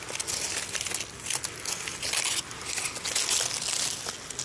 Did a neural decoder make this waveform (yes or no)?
no